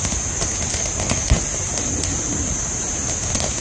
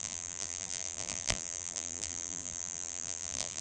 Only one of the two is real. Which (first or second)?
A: first